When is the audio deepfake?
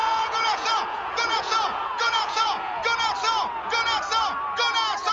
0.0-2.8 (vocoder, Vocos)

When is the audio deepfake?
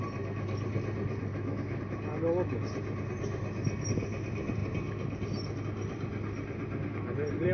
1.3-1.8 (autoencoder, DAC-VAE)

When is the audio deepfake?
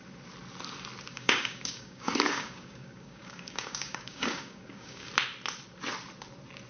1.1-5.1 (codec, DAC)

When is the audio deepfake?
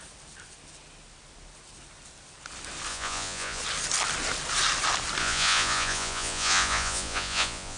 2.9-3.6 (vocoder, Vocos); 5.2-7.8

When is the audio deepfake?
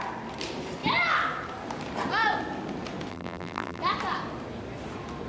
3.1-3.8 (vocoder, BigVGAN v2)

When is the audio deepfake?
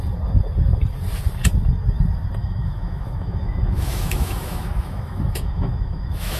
2.4-6.4 (autoencoder, DAC-VAE)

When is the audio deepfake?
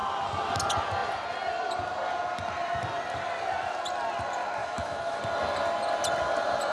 4.6-5.2 (autoencoder, DAC-VAE)